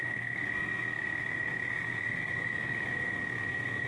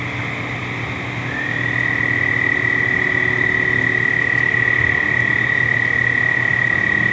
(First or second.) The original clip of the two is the second